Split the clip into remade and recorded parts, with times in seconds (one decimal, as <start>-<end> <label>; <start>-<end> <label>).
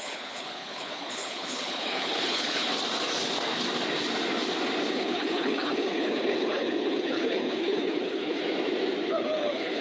0.0-2.7 remade; 2.7-4.9 recorded; 4.9-8.4 remade; 8.4-9.1 recorded; 9.1-9.8 remade